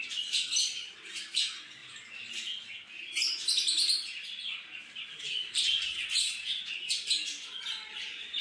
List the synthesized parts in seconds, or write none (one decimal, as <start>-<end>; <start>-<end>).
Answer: 5.9-6.6